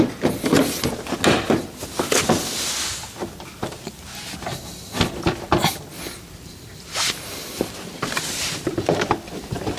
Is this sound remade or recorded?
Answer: recorded